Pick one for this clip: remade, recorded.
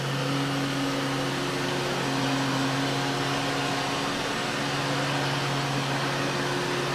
recorded